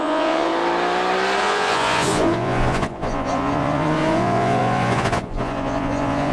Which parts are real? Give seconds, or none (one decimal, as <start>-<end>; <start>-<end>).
0.5-1.4

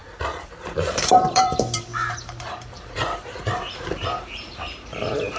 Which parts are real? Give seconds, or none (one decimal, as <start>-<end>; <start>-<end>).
none

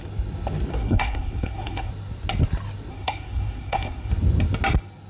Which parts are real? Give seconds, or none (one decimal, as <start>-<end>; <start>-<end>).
0.0-0.7; 1.9-2.9; 4.1-5.1

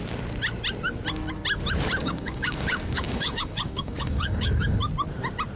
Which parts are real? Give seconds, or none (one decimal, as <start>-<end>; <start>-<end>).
0.0-2.0; 4.8-5.6

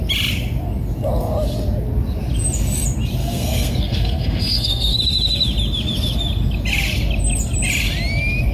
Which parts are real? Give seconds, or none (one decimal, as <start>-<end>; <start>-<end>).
0.0-3.2; 5.0-8.5

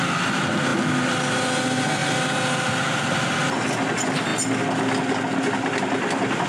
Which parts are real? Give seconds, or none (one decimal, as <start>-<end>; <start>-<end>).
0.0-6.5